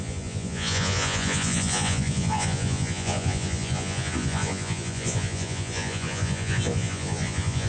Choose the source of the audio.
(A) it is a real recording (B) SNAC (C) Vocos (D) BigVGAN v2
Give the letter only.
C